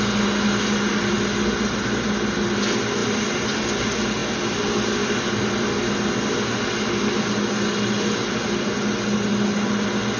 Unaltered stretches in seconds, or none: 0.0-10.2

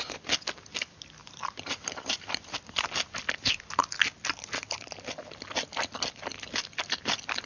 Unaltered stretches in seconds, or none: 0.0-1.2; 2.9-7.5

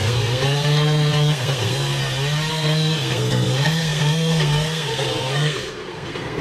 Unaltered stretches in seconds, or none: 2.0-2.5

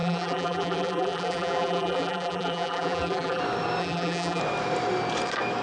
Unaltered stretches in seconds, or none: 3.4-3.8; 4.4-5.6

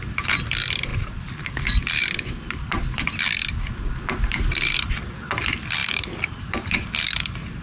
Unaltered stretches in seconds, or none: 0.0-0.9; 4.9-7.6

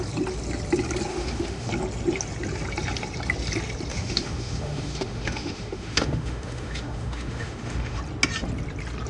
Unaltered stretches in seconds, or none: 0.0-1.1; 1.7-3.9; 8.0-9.1